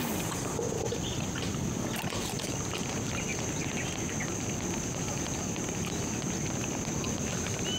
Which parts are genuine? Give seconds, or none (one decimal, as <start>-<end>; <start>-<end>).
0.0-7.8